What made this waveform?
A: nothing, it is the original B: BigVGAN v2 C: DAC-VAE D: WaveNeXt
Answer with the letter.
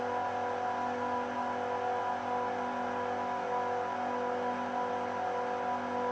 A